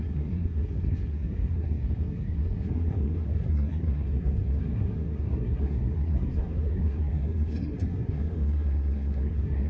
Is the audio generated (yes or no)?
yes